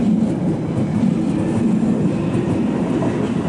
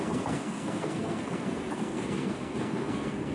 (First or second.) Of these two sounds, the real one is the first